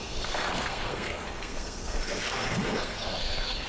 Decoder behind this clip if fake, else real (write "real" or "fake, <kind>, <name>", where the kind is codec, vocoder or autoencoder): fake, codec, SNAC